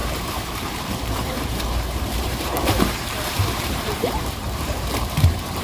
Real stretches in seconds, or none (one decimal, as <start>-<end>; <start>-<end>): none